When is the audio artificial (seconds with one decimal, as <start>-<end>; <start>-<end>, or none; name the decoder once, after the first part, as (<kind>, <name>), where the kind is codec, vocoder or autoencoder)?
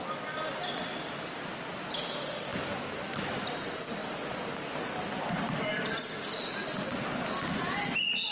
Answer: none